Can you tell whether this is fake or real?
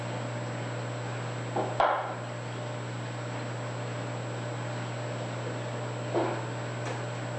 real